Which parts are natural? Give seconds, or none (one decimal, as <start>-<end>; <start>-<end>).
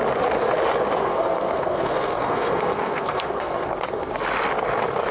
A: 0.0-1.0; 4.1-5.1